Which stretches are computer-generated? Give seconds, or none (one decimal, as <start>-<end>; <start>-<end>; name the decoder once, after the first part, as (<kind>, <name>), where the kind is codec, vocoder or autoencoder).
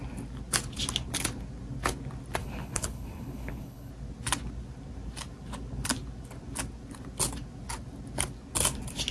2.4-3.9 (codec, HILCodec)